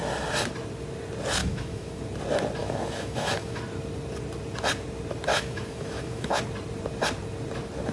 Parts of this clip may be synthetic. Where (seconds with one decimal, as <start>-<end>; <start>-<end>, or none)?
1.4-2.0; 2.6-3.6; 5.3-6.4